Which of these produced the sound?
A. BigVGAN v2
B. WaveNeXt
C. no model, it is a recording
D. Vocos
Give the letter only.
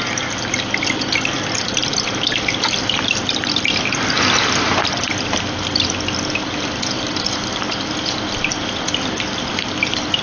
A